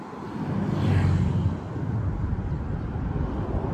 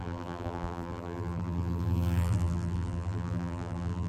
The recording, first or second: first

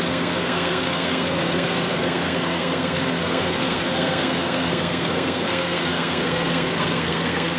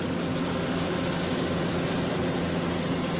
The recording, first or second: second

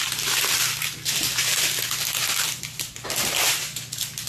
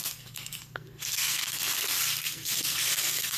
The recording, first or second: first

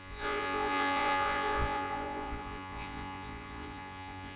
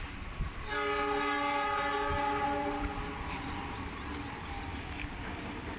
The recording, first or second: second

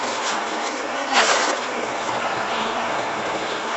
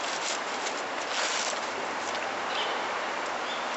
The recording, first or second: second